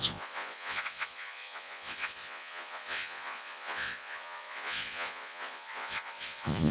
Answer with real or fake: fake